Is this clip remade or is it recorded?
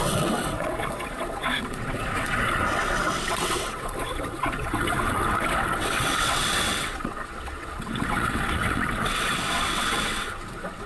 remade